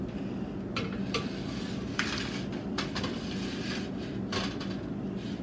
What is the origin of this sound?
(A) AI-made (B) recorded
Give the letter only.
B